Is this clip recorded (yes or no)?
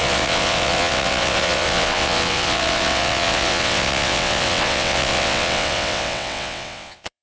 no